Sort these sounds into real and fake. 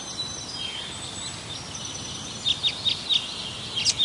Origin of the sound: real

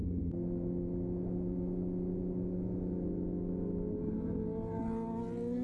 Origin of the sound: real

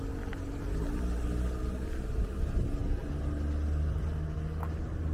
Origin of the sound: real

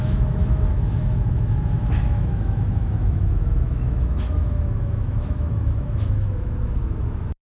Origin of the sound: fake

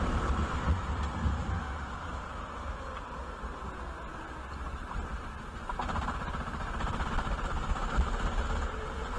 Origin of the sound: real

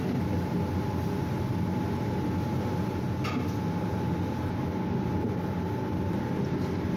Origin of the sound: real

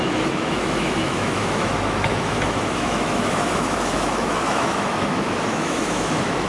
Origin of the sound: fake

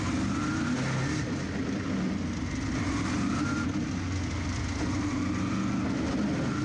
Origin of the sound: real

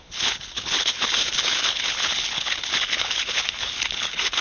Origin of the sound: fake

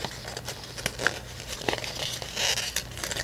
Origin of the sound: real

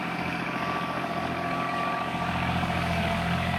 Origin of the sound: fake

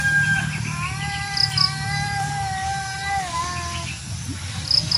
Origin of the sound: real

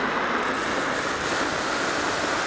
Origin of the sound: real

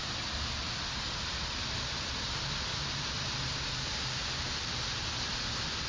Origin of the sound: real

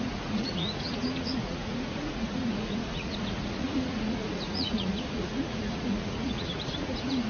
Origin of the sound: fake